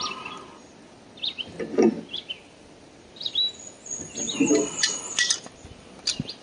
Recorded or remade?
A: recorded